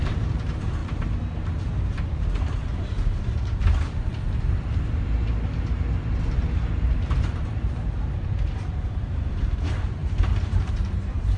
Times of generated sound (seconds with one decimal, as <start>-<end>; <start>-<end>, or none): 0.0-0.8; 1.7-4.1; 6.7-11.4